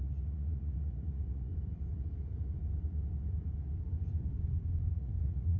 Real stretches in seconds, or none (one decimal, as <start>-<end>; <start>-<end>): 1.5-4.9